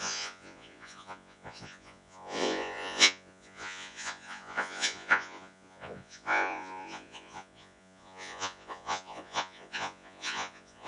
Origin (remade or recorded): remade